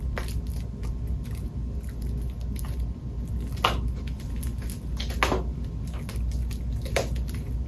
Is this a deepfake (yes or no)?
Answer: no